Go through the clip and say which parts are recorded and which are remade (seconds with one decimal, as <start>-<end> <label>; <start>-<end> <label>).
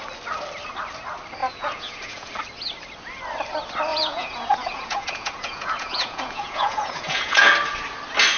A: 0.0-1.4 recorded; 1.4-2.3 remade; 2.3-3.9 recorded; 3.9-7.4 remade; 7.4-8.4 recorded